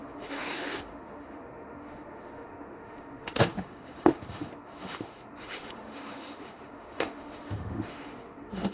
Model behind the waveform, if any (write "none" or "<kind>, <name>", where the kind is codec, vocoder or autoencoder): autoencoder, DAC-VAE